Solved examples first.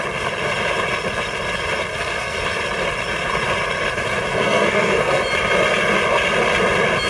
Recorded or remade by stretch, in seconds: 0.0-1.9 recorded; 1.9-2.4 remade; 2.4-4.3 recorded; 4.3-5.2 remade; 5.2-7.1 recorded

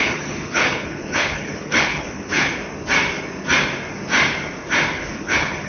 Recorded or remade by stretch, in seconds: 0.0-2.6 remade; 2.6-4.9 recorded; 4.9-5.7 remade

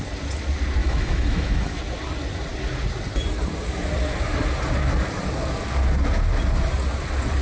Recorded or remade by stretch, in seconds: 0.0-0.8 recorded; 0.8-1.8 remade; 1.8-7.4 recorded